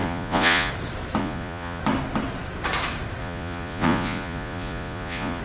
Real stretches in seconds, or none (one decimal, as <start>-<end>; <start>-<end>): 0.7-1.2; 1.8-3.2